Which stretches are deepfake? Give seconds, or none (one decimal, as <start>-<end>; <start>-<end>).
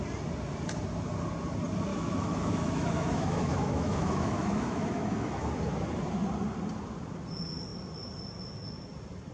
1.9-5.5